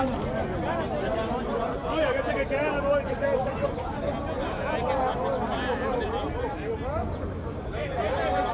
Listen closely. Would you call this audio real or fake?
real